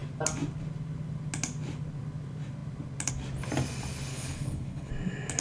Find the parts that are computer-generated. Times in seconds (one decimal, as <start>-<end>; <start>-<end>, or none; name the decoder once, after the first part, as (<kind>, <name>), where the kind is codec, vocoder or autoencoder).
4.1-4.9 (codec, HILCodec)